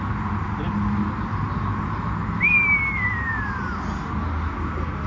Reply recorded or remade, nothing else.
recorded